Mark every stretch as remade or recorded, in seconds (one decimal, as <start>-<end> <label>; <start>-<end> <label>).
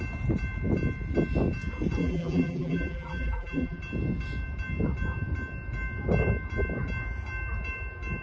0.0-2.0 recorded; 2.0-3.8 remade; 3.8-8.2 recorded